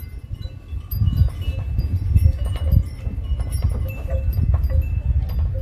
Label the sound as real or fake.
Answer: real